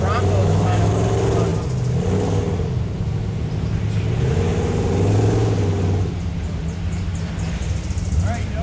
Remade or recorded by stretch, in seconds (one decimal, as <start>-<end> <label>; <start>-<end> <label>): 0.0-0.4 recorded; 0.4-0.9 remade; 0.9-8.6 recorded

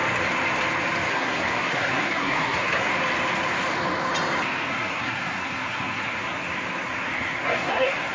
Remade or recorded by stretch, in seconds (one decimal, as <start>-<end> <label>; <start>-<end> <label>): 0.0-1.1 recorded; 1.1-2.9 remade; 2.9-4.7 recorded; 4.7-8.1 remade

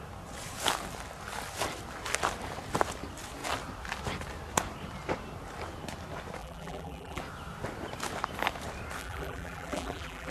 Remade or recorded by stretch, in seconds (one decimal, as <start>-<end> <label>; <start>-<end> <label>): 0.0-6.4 recorded; 6.4-7.2 remade; 7.2-9.0 recorded; 9.0-10.3 remade

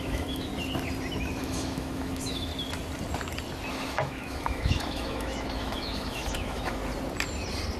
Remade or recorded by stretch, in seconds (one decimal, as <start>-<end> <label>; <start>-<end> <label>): 0.0-0.5 remade; 0.5-1.4 recorded; 1.4-2.5 remade; 2.5-3.7 recorded; 3.7-6.8 remade; 6.8-7.8 recorded

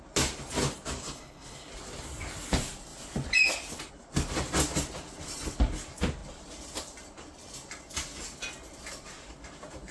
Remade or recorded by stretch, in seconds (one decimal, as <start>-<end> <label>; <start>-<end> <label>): 0.0-1.0 recorded; 1.0-1.7 remade; 1.7-9.9 recorded

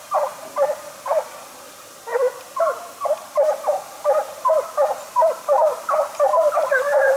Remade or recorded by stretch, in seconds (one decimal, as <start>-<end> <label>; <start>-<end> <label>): 0.0-7.2 recorded

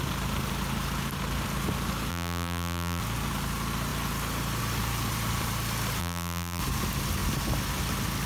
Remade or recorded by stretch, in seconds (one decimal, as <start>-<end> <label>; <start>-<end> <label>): 0.0-2.1 recorded; 2.1-3.0 remade; 3.0-6.0 recorded; 6.0-6.6 remade; 6.6-8.3 recorded

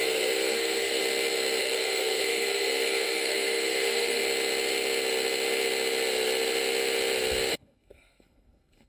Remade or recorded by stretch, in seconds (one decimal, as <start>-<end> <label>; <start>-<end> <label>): 0.0-1.0 remade; 1.0-1.6 recorded; 1.6-4.2 remade; 4.2-7.5 recorded; 7.5-8.9 remade